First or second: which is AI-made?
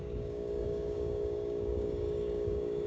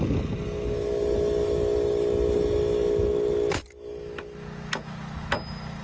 first